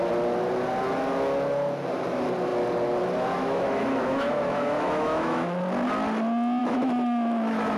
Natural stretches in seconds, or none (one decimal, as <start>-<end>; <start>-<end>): 0.0-3.4; 5.6-6.6